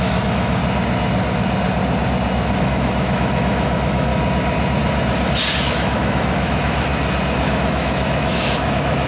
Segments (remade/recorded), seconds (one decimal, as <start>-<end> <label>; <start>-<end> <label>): 0.0-0.6 remade; 0.6-2.6 recorded; 2.6-4.1 remade; 4.1-5.6 recorded; 5.6-6.9 remade; 6.9-7.4 recorded; 7.4-9.1 remade